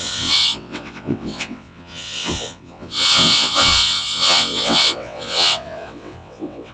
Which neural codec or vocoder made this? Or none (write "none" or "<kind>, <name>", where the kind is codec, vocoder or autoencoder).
vocoder, WaveNeXt